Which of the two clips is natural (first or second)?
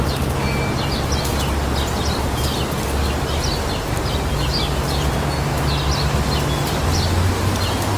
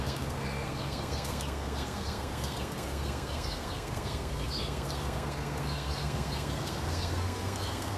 first